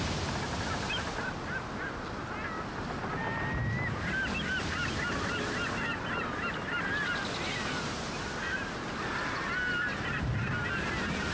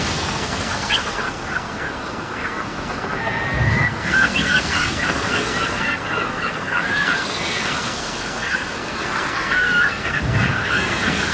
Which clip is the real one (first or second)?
first